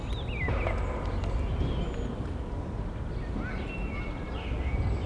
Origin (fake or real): real